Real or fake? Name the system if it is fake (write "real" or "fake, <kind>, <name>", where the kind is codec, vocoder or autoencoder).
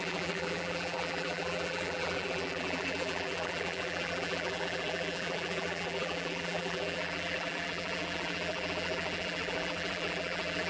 fake, vocoder, BigVGAN v2